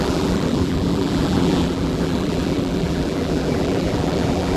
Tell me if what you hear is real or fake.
fake